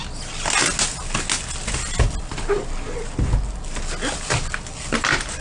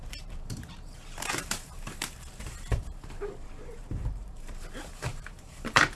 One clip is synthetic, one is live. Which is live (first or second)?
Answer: first